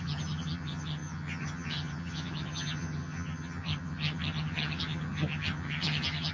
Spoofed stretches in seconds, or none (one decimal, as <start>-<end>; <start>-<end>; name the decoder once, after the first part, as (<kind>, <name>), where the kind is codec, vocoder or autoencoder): 0.0-6.3 (vocoder, HiFi-GAN)